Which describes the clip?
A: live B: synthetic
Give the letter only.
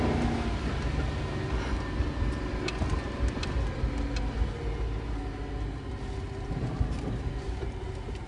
A